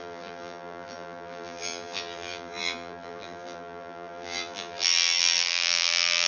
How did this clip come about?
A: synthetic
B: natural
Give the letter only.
A